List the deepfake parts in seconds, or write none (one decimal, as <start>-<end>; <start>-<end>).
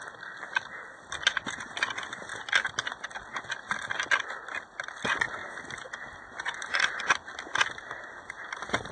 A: none